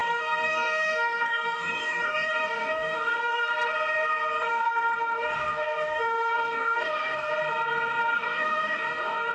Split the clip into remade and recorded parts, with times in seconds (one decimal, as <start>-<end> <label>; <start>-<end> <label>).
0.0-3.5 remade; 3.5-4.5 recorded; 4.5-7.3 remade; 7.3-8.0 recorded; 8.0-9.3 remade

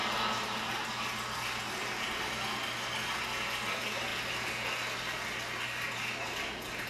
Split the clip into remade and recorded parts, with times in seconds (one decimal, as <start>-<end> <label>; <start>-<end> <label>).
0.0-6.9 recorded

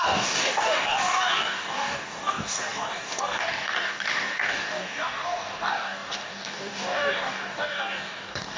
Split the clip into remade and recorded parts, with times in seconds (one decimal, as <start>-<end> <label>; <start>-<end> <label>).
0.0-8.6 remade

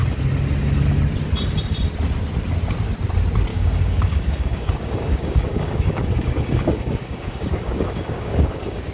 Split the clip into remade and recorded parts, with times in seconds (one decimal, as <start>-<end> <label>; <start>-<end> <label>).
0.0-3.5 recorded; 3.5-8.9 remade